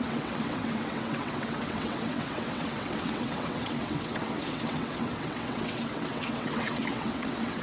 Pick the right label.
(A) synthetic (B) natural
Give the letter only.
A